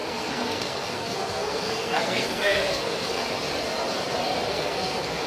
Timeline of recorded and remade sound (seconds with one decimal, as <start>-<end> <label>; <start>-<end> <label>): 0.0-3.2 remade; 3.2-4.5 recorded; 4.5-5.3 remade

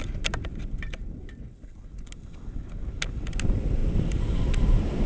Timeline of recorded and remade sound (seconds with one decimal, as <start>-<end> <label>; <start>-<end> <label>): 0.0-5.1 recorded

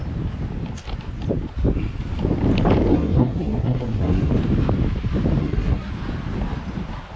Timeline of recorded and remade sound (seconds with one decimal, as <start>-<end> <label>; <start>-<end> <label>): 0.0-2.9 recorded; 2.9-4.3 remade; 4.3-5.4 recorded; 5.4-5.9 remade; 5.9-7.2 recorded

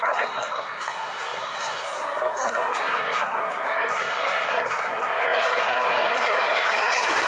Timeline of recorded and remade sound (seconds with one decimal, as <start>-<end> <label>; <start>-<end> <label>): 0.0-7.3 remade

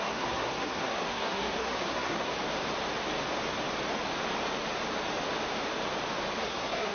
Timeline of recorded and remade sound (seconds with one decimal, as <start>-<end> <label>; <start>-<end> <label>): 0.0-2.3 remade; 2.3-6.4 recorded; 6.4-6.9 remade

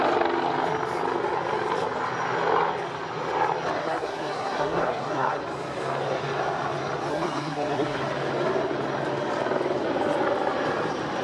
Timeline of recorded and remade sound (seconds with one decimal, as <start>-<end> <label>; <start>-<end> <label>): 0.0-3.8 recorded; 3.8-5.4 remade; 5.4-7.1 recorded; 7.1-8.0 remade; 8.0-11.2 recorded